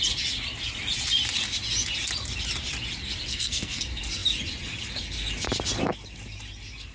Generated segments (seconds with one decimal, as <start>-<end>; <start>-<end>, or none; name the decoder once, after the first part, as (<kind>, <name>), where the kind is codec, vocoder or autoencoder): 3.3-3.8 (codec, SNAC)